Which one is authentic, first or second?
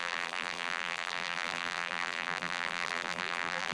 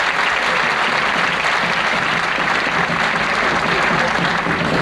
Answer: second